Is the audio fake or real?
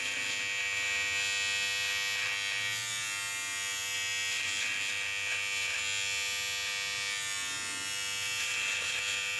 real